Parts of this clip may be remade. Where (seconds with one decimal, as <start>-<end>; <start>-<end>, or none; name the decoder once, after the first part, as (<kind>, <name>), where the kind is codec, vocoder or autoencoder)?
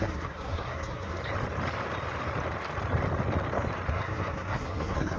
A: 0.0-1.2 (codec, SNAC); 3.9-5.2